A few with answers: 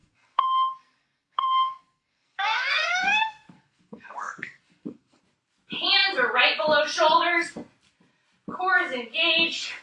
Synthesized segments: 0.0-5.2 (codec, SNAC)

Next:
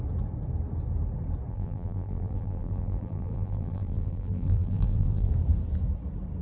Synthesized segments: 1.5-5.3 (vocoder, BigVGAN v2)

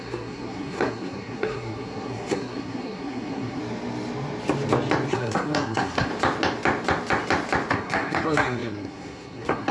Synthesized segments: 0.0-3.6 (codec, SNAC); 5.1-6.1; 7.7-9.7

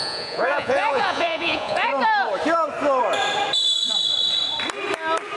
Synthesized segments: 0.0-1.9 (vocoder, Vocos)